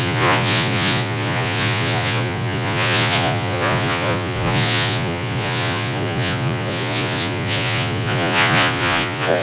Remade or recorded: remade